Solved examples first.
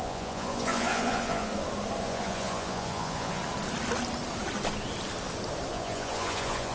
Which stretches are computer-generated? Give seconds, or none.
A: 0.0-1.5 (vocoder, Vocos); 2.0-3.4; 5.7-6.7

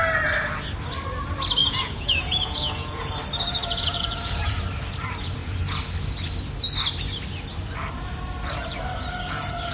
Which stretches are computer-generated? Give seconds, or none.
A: 1.6-3.1 (vocoder, Vocos); 3.6-4.6

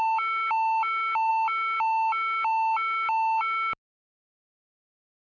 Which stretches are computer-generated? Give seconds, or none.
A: none

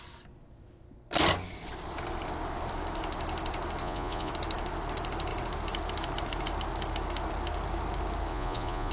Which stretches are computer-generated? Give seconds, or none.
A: 3.8-4.3 (vocoder, Vocos); 8.3-8.9

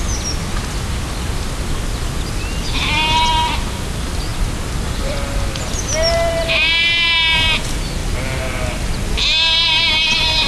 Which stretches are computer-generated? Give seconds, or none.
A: none

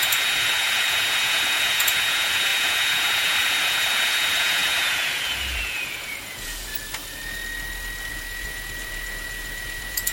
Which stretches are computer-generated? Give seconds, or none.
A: 0.0-6.7 (vocoder, Vocos); 8.1-10.1

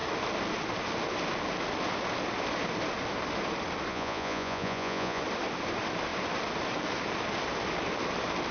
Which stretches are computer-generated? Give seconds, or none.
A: 3.9-5.2 (vocoder, Vocos)

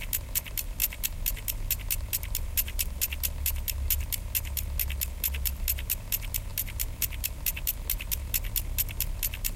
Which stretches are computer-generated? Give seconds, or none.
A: none